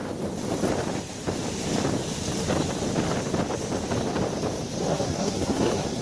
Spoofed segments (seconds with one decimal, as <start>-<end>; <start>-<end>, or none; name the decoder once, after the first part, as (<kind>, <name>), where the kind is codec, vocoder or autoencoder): 4.9-6.0 (codec, SNAC)